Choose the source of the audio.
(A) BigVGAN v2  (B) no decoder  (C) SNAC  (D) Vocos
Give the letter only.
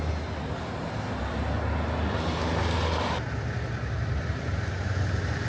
B